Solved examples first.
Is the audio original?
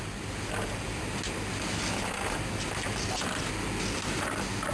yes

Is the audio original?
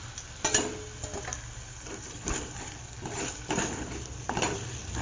yes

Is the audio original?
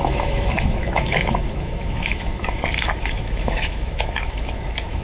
no